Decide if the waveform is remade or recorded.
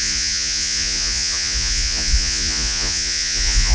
remade